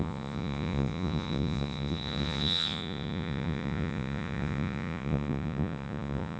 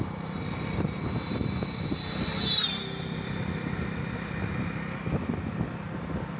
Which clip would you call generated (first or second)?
first